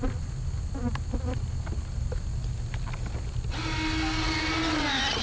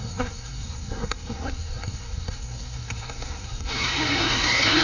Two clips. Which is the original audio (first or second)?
first